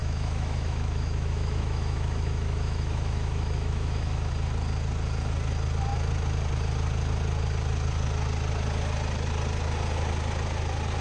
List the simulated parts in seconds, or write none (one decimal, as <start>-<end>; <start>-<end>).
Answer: 0.0-4.3